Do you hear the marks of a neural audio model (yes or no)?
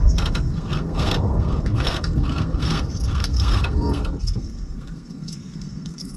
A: yes